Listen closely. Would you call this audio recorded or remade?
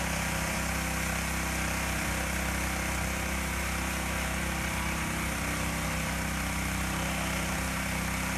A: recorded